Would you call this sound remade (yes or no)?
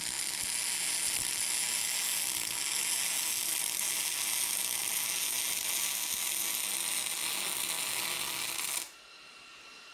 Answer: no